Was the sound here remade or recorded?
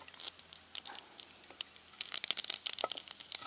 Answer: recorded